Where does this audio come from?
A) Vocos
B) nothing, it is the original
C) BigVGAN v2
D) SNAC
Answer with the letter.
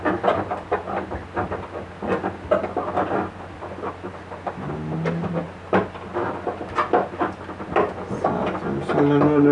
B